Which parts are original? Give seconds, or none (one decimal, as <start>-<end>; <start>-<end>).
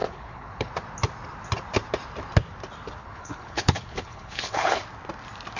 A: 0.7-3.0; 4.8-5.6